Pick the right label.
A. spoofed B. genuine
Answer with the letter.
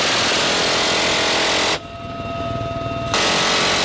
B